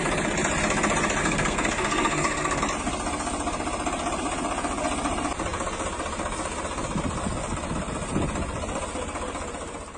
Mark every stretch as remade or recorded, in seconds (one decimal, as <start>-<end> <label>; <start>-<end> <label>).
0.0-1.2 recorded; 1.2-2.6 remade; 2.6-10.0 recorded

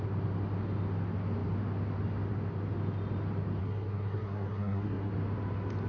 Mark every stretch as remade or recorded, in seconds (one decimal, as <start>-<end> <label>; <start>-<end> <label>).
0.0-3.6 recorded; 3.6-5.1 remade; 5.1-5.9 recorded

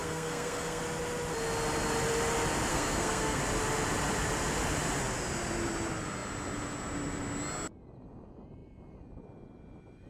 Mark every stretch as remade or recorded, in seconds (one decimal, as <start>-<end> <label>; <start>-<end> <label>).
0.0-0.8 remade; 0.8-2.7 recorded; 2.7-3.4 remade; 3.4-10.1 recorded